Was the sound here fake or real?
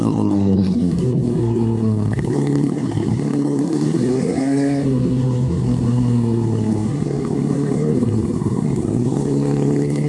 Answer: fake